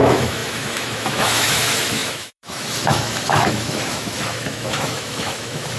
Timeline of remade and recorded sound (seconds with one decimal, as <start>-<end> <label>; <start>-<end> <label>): 0.0-5.8 remade